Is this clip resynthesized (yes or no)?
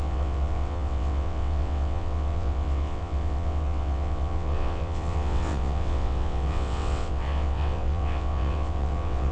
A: yes